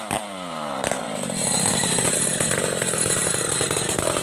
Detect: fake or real fake